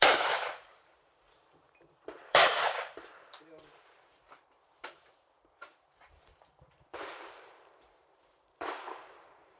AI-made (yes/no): yes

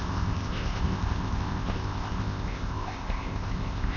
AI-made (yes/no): yes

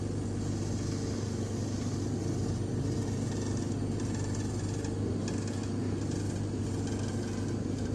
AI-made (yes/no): no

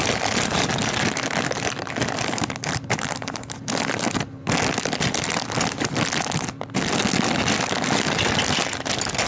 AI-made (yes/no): no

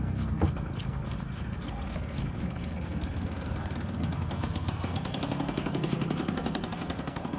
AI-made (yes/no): yes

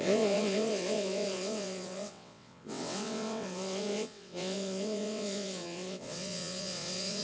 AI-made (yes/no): yes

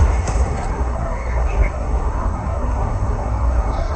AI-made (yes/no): yes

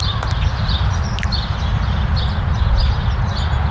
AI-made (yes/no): no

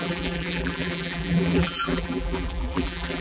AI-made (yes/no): yes